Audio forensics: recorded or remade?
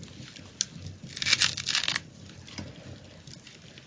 recorded